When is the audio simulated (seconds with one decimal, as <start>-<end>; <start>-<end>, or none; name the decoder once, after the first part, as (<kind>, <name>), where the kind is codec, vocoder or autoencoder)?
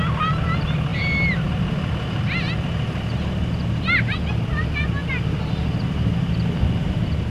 none